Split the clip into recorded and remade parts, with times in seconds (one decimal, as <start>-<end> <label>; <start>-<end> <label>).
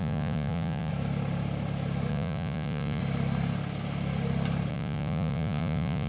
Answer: 0.0-0.9 remade; 0.9-2.1 recorded; 2.1-3.0 remade; 3.0-4.7 recorded; 4.7-6.1 remade